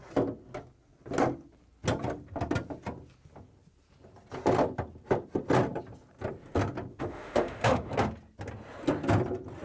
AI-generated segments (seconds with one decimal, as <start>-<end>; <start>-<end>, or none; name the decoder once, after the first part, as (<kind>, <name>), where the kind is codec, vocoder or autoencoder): 6.9-7.9 (autoencoder, DAC-VAE)